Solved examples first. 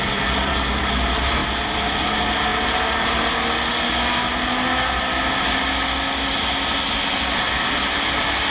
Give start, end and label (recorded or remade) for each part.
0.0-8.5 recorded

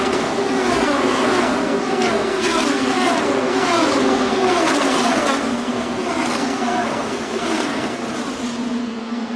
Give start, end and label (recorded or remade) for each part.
0.0-8.0 remade; 8.0-8.8 recorded; 8.8-9.4 remade